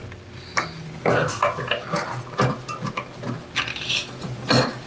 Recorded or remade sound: recorded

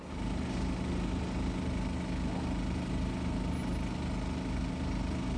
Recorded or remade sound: recorded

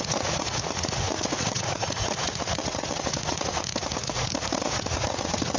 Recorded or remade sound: remade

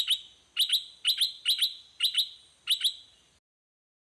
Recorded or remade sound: recorded